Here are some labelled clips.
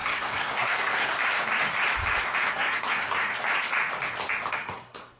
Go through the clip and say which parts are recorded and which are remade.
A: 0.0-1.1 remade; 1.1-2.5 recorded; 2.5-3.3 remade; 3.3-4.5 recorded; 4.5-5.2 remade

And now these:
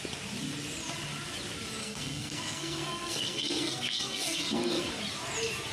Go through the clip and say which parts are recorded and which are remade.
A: 0.0-1.8 recorded; 1.8-4.9 remade; 4.9-5.7 recorded

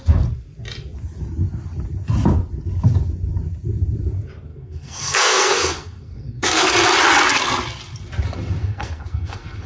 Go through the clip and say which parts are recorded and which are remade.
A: 0.0-4.5 recorded; 4.5-6.7 remade; 6.7-8.6 recorded; 8.6-9.7 remade

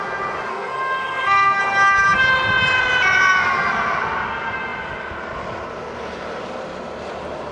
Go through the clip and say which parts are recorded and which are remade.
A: 0.0-0.5 recorded; 0.5-1.6 remade; 1.6-7.5 recorded

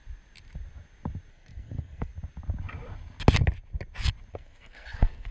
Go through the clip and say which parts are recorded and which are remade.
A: 0.0-1.3 recorded; 1.3-2.1 remade; 2.1-4.3 recorded; 4.3-5.3 remade

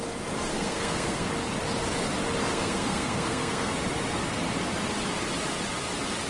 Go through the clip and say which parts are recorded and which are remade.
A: 0.0-0.5 recorded; 0.5-1.3 remade; 1.3-2.5 recorded; 2.5-3.7 remade; 3.7-6.3 recorded

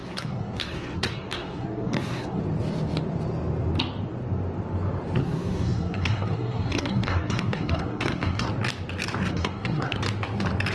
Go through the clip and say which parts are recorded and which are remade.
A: 0.0-2.4 remade; 2.4-5.2 recorded; 5.2-8.5 remade; 8.5-9.3 recorded; 9.3-10.0 remade; 10.0-10.7 recorded

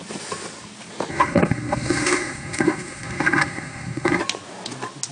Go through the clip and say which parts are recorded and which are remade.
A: 0.0-1.1 recorded; 1.1-4.2 remade; 4.2-5.1 recorded